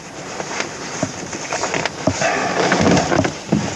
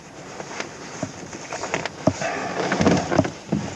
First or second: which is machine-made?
first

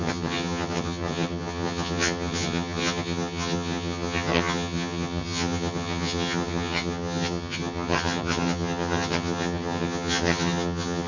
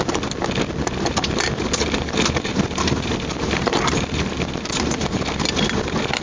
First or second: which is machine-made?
first